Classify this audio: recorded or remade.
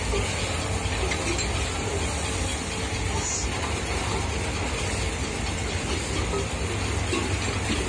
recorded